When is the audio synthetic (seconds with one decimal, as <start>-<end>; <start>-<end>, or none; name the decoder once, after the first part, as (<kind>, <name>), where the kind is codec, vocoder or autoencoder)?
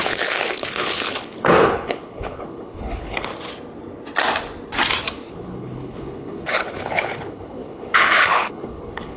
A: 0.0-3.3 (codec, HILCodec); 5.3-9.2